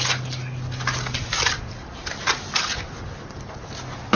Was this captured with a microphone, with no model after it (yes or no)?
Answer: yes